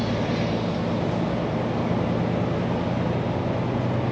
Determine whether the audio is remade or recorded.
recorded